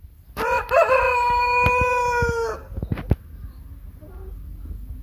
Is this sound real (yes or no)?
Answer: yes